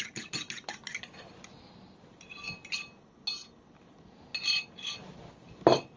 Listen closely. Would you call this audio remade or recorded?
recorded